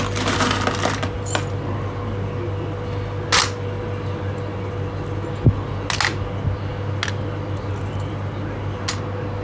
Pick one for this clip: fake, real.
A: real